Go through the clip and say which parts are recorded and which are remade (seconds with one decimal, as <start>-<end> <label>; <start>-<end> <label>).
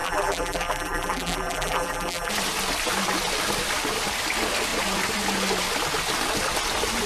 0.0-2.3 remade; 2.3-7.1 recorded